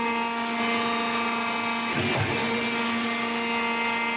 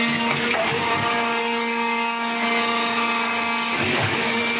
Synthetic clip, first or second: second